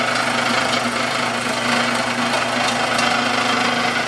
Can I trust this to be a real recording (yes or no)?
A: yes